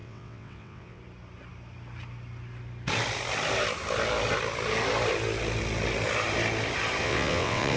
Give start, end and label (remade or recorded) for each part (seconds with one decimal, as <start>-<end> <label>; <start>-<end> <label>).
0.0-1.0 remade; 1.0-7.0 recorded; 7.0-7.8 remade